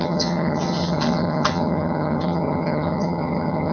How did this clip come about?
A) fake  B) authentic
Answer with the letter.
A